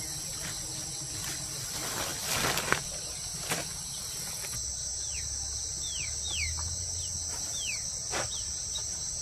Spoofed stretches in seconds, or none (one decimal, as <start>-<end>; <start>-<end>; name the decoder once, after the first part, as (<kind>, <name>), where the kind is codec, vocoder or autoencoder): none